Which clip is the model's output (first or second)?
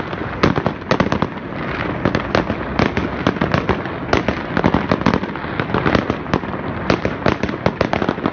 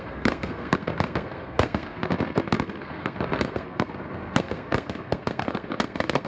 second